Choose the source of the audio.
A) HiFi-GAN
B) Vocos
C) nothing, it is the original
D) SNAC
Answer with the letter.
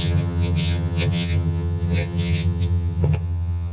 A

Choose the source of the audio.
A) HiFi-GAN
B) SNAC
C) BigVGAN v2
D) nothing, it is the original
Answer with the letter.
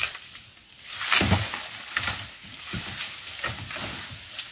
D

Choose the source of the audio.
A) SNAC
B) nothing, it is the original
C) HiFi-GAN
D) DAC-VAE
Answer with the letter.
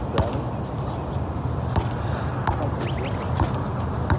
B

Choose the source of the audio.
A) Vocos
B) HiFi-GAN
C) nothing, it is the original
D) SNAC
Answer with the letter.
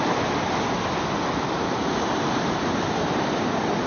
C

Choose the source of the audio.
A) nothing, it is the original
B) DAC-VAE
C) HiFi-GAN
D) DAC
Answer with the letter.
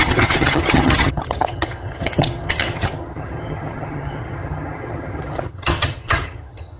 C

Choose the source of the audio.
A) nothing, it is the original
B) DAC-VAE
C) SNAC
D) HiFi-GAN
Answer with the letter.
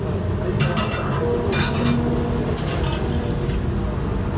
A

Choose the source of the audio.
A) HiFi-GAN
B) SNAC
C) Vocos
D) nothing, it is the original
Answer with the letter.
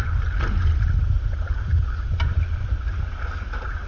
D